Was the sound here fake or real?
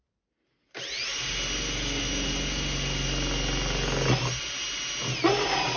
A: real